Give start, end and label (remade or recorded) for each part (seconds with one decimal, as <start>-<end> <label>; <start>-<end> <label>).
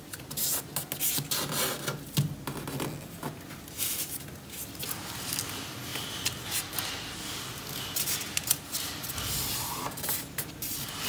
0.0-11.1 recorded